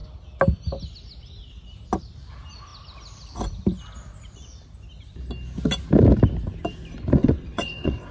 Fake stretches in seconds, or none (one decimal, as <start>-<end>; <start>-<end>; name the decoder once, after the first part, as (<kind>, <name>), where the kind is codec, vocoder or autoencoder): 7.2-8.1 (vocoder, WaveNeXt)